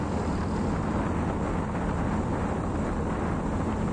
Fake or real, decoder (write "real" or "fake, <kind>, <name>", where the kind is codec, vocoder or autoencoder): real